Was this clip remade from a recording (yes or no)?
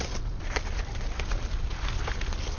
no